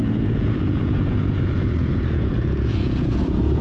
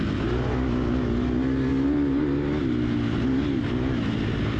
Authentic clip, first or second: second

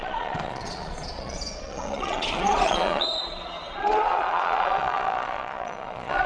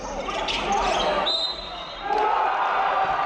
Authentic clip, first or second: second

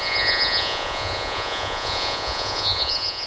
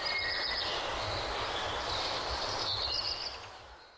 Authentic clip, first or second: second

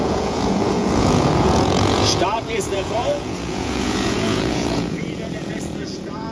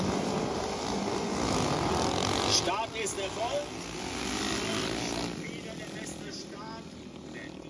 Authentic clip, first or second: second